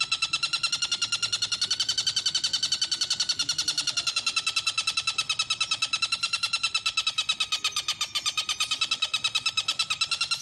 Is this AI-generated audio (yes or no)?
no